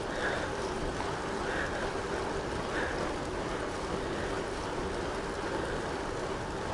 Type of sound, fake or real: real